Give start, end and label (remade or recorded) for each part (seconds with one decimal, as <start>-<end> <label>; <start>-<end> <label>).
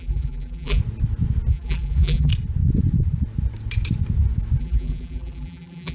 0.0-0.8 remade; 0.8-1.5 recorded; 1.5-2.3 remade; 2.3-4.6 recorded; 4.6-5.9 remade